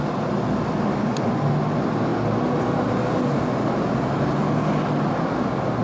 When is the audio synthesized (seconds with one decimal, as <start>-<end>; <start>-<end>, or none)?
none